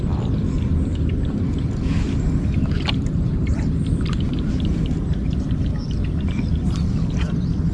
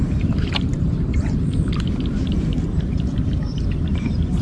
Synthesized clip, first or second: second